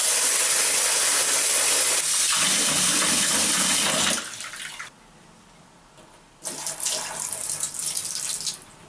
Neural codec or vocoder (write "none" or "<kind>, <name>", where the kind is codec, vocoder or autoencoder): none